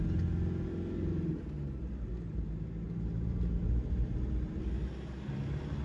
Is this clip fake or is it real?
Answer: real